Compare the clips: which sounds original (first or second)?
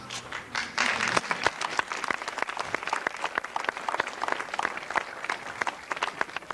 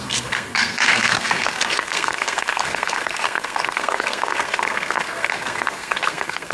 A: first